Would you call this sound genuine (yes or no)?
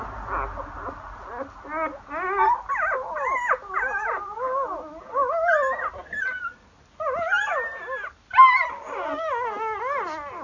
yes